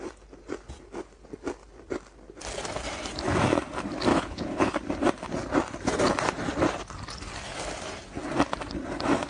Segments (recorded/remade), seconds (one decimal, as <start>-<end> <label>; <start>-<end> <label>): 0.0-4.1 recorded; 4.1-4.7 remade; 4.7-9.3 recorded